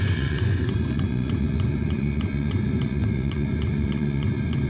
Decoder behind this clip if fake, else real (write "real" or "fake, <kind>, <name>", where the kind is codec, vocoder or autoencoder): fake, vocoder, Vocos